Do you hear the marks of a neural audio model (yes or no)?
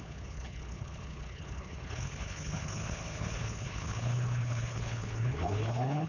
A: yes